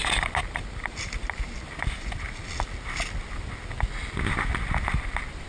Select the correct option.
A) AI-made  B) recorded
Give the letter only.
B